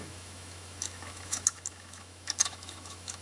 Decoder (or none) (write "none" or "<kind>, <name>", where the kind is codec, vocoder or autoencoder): autoencoder, DAC-VAE